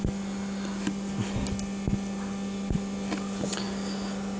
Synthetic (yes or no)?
no